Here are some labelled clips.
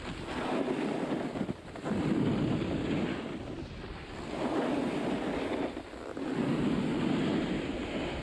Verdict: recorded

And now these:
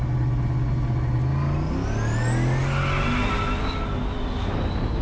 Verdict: recorded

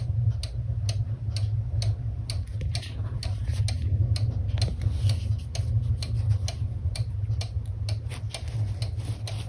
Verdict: recorded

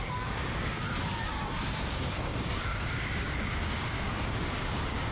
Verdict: remade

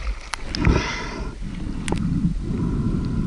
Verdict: recorded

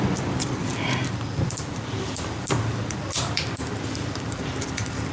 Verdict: remade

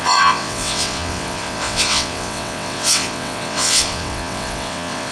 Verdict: remade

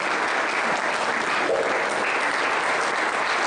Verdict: recorded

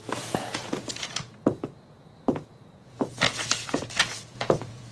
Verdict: remade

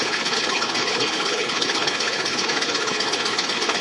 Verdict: remade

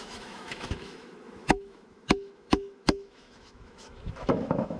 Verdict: remade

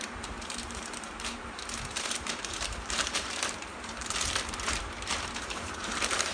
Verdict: remade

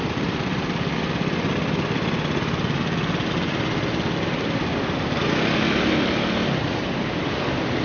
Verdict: recorded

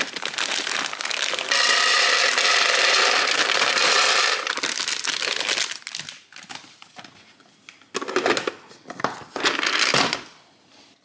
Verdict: recorded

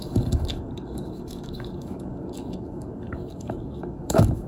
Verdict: remade